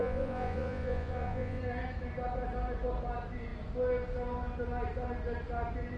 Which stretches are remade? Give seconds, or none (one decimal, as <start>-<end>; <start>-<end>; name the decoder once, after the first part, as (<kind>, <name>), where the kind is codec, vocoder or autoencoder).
0.0-1.6 (vocoder, Vocos)